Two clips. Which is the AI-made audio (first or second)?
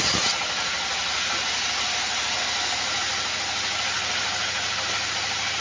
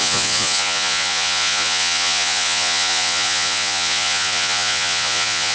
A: second